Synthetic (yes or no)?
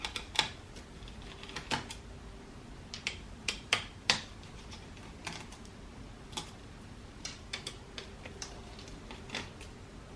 no